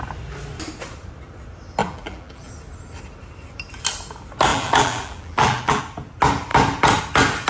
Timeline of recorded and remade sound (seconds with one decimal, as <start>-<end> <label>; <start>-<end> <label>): 0.0-1.8 recorded; 1.8-2.5 remade; 2.5-4.5 recorded; 4.5-5.8 remade; 5.8-7.5 recorded